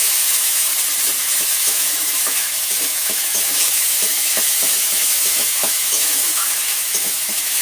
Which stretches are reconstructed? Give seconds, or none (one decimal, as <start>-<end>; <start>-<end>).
0.0-0.7; 1.2-7.6